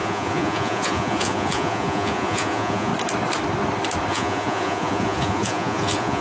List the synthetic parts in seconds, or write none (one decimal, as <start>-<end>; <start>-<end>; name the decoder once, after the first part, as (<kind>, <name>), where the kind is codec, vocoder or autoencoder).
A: 0.0-2.9 (vocoder, Vocos); 4.1-6.2